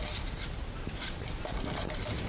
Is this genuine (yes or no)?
no